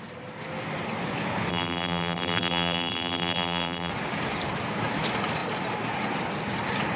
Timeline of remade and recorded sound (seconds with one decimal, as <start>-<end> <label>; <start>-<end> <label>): 0.0-1.5 recorded; 1.5-3.9 remade; 3.9-7.0 recorded